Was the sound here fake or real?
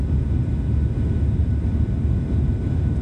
real